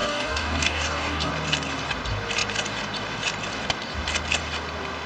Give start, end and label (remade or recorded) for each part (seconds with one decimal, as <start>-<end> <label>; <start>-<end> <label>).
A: 0.0-1.3 remade; 1.3-5.1 recorded